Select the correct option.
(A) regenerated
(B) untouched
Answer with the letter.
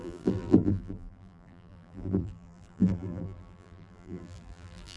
A